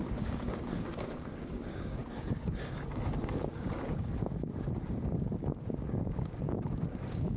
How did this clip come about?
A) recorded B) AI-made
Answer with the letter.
B